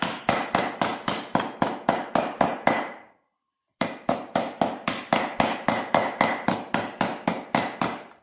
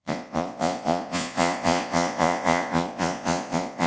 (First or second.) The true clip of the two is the first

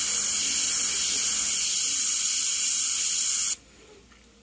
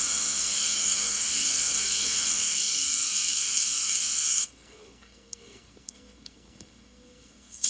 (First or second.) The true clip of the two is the first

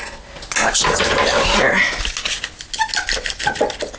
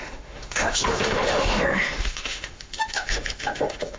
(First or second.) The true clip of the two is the first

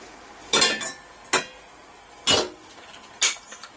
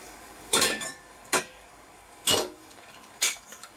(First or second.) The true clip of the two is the first